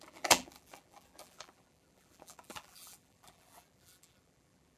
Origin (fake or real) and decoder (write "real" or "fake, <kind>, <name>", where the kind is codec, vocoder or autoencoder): fake, vocoder, BigVGAN v2